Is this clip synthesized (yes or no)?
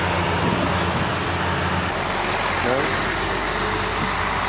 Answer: no